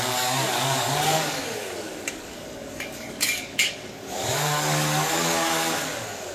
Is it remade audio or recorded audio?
remade